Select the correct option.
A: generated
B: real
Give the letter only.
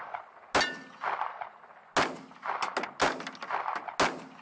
B